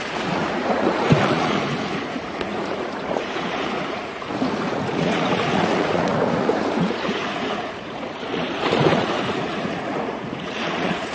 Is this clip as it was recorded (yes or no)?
no